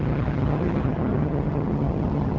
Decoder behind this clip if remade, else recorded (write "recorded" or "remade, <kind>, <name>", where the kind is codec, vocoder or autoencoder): remade, vocoder, HiFi-GAN